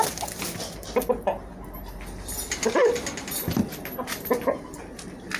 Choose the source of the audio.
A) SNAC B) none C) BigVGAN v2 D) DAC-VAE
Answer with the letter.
B